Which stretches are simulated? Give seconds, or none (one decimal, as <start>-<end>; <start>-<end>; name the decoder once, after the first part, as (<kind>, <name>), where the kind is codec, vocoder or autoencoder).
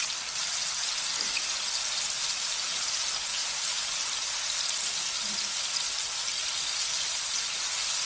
none